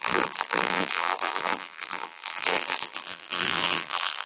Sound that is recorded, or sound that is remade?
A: remade